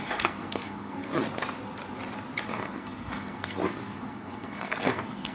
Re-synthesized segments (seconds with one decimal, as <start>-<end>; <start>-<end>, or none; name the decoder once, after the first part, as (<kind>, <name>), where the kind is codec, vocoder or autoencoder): 0.0-1.1 (codec, SNAC); 2.5-5.3